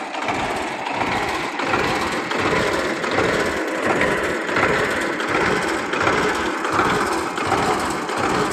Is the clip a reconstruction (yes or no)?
no